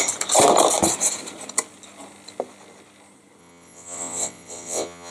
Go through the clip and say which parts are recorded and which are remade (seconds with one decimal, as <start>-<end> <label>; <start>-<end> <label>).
0.0-3.4 recorded; 3.4-5.1 remade